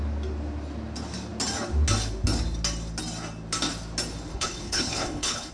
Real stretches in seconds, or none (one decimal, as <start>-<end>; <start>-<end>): 0.0-4.3